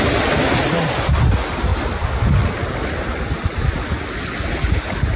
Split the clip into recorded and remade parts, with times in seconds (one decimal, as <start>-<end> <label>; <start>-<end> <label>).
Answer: 0.0-5.2 recorded